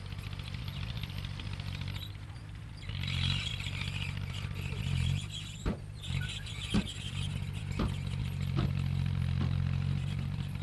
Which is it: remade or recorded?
remade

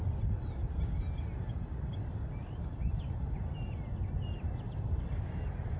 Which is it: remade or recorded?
recorded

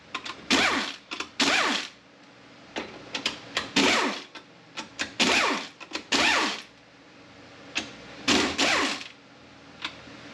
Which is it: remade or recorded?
remade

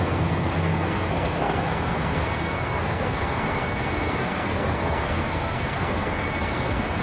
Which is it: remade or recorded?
remade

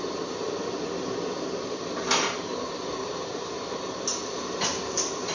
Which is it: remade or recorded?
remade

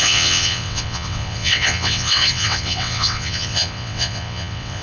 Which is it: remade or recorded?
remade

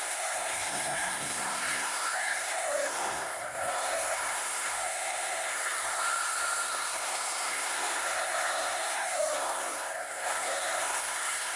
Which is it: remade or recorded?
remade